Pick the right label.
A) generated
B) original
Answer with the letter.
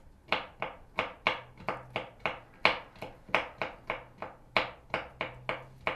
B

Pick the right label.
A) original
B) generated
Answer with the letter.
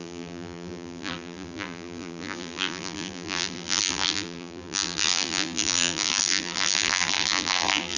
B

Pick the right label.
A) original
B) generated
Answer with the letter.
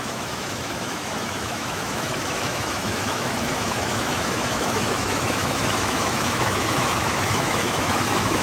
B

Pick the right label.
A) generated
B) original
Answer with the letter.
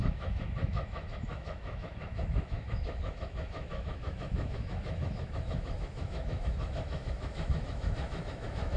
A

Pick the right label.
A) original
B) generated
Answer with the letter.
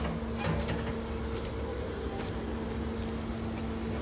A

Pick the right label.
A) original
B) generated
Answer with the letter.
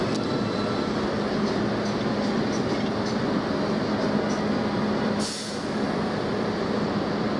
A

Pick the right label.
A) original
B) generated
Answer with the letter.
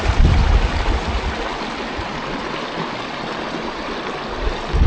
A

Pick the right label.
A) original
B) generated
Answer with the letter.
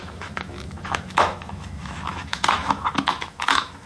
B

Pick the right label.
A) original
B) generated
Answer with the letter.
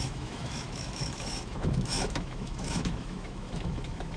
B